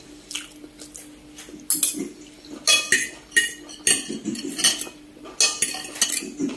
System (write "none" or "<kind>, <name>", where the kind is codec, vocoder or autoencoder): none